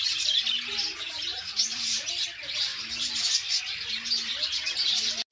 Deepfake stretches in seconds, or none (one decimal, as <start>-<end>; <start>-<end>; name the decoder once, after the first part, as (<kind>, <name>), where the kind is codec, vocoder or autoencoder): 1.3-2.1 (vocoder, Vocos)